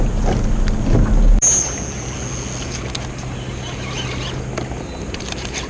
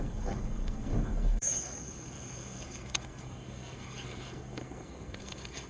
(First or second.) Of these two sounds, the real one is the first